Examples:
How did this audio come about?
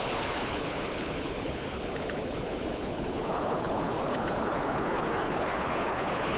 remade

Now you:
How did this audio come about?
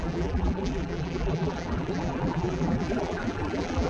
remade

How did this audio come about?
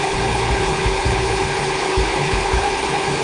remade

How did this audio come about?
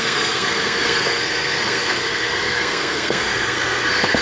remade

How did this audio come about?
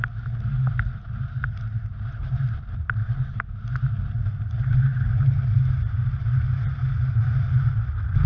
recorded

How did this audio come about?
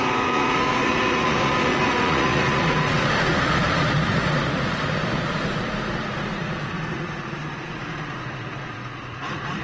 remade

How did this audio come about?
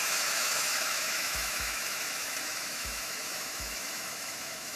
remade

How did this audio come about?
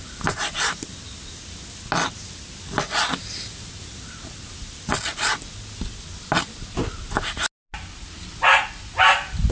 recorded